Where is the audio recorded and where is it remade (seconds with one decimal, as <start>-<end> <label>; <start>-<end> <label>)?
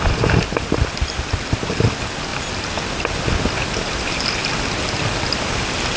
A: 0.0-6.0 recorded